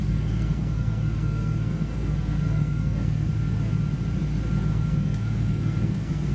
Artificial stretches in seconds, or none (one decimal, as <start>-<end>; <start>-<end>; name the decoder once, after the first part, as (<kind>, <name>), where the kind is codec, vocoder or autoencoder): 0.0-3.3 (codec, SNAC); 4.7-6.3